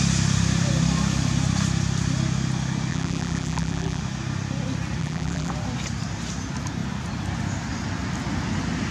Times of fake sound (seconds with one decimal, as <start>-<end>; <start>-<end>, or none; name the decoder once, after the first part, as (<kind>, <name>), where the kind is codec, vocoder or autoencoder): 2.9-4.0 (vocoder, BigVGAN v2); 5.0-5.5